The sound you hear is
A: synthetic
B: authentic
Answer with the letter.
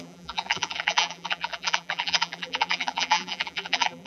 A